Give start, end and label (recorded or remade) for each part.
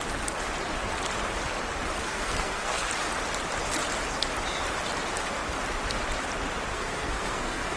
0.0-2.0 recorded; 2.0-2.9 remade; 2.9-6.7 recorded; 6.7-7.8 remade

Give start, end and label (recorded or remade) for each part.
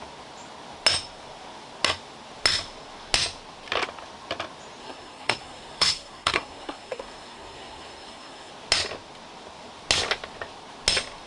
0.0-4.8 recorded; 4.8-8.5 remade; 8.5-11.3 recorded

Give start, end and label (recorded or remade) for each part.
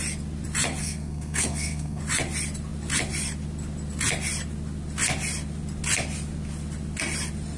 0.0-0.8 recorded; 0.8-2.0 remade; 2.0-7.6 recorded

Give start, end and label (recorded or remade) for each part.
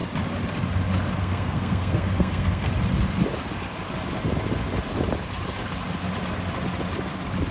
0.0-1.2 recorded; 1.2-2.7 remade; 2.7-7.5 recorded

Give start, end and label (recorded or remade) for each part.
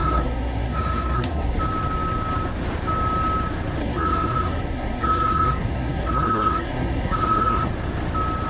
0.0-1.6 remade; 1.6-3.8 recorded; 3.8-7.7 remade; 7.7-8.5 recorded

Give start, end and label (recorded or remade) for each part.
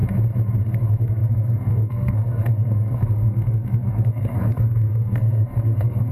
0.0-0.6 recorded; 0.6-6.1 remade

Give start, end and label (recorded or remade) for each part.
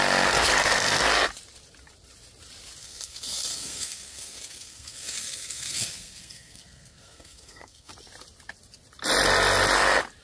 0.0-2.8 recorded; 2.8-7.9 remade; 7.9-10.2 recorded